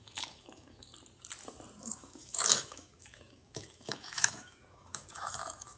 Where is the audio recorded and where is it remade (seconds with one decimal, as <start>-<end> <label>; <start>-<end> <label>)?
0.0-0.9 remade; 0.9-1.8 recorded; 1.8-5.8 remade